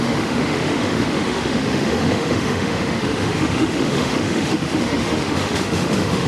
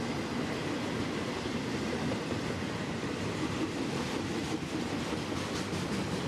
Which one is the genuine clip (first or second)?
second